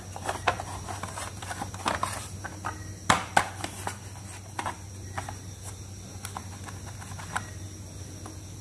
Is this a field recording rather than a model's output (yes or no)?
yes